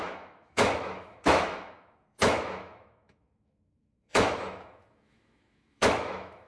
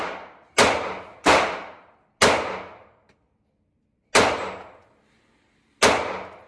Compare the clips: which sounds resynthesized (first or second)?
first